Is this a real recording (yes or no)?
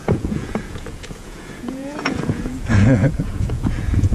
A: no